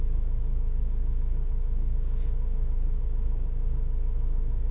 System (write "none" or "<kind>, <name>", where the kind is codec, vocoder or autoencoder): codec, DAC